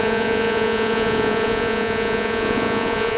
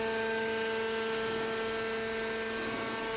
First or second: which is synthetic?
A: first